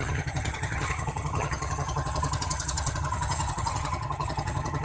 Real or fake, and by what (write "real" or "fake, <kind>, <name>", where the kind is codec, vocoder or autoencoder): fake, vocoder, HiFi-GAN